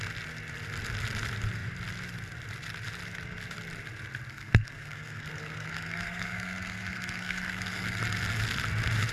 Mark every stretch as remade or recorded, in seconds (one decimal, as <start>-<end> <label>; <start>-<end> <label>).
0.0-4.3 recorded; 4.3-8.0 remade; 8.0-9.1 recorded